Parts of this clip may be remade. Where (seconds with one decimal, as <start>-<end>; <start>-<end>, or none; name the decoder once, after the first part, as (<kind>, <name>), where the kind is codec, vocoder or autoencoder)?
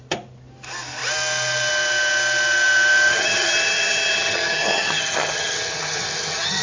3.1-6.6 (vocoder, HiFi-GAN)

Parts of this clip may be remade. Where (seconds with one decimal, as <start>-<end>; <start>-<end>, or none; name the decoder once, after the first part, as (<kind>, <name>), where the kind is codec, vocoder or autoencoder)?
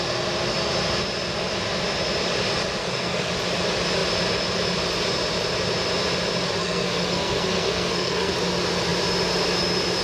2.8-3.3 (codec, SNAC); 6.6-8.3